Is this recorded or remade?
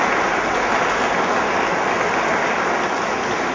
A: recorded